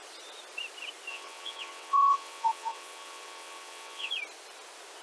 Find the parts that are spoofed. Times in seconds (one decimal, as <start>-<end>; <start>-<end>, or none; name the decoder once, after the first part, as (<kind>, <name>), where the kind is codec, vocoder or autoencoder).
1.1-4.1 (vocoder, WaveNeXt)